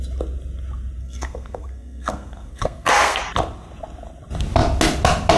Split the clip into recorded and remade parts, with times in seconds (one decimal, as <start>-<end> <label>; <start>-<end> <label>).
0.0-1.0 recorded; 1.0-3.2 remade; 3.2-5.4 recorded

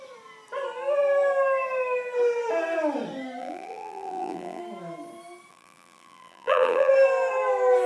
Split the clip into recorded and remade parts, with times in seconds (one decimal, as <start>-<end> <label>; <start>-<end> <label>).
0.0-3.4 recorded; 3.4-4.6 remade; 4.6-5.5 recorded; 5.5-6.9 remade; 6.9-7.9 recorded

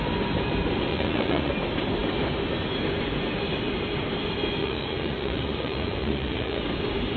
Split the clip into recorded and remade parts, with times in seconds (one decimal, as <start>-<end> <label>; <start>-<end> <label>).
0.0-0.9 recorded; 0.9-1.5 remade; 1.5-4.6 recorded; 4.6-6.6 remade; 6.6-7.2 recorded

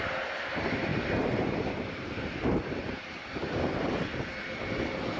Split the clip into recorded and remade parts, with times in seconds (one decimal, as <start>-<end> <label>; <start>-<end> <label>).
0.0-0.9 recorded; 0.9-2.4 remade; 2.4-2.8 recorded; 2.8-3.4 remade; 3.4-5.2 recorded

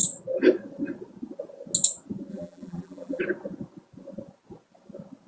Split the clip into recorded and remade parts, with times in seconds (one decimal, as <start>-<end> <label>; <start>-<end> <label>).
0.0-2.3 recorded; 2.3-3.2 remade; 3.2-5.3 recorded

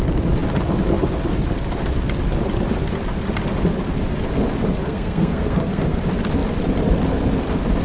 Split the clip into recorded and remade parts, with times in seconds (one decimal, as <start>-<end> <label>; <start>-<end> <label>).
0.0-4.8 recorded; 4.8-6.0 remade; 6.0-7.8 recorded

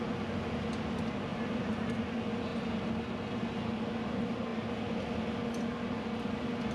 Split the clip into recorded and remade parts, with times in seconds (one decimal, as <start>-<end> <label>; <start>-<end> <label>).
0.0-6.7 recorded